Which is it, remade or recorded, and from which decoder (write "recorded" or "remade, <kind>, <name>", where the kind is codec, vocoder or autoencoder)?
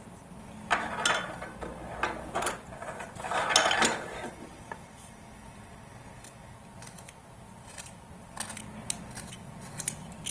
recorded